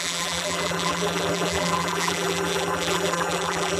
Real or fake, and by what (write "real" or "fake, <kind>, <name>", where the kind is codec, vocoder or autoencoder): fake, vocoder, BigVGAN v2